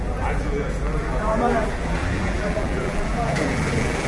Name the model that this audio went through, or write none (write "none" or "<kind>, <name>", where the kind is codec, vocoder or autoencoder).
vocoder, BigVGAN v2